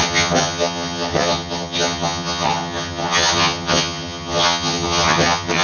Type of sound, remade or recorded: remade